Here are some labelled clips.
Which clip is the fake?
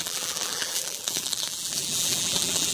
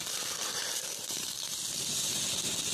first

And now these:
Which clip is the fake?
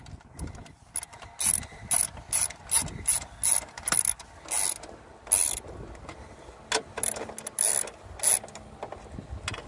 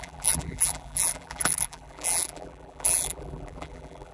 second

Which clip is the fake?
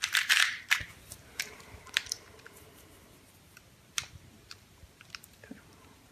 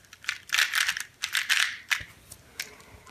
first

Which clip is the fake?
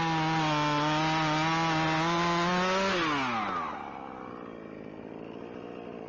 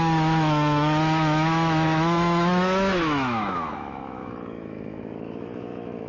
second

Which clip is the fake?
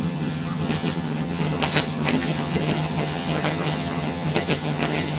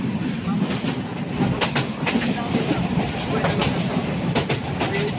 first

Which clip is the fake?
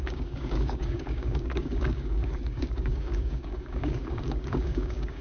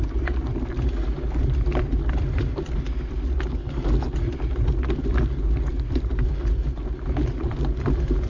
first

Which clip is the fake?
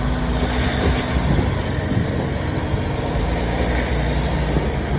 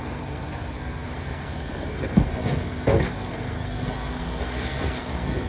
second